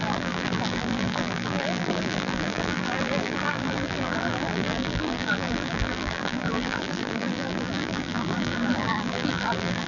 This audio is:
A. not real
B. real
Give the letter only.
A